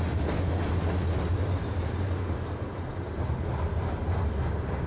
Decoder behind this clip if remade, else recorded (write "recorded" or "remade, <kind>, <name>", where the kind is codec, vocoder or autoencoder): recorded